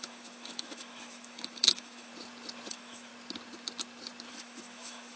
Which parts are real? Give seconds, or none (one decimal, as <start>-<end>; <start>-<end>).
2.1-2.7; 3.1-4.3